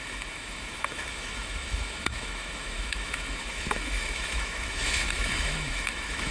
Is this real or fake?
fake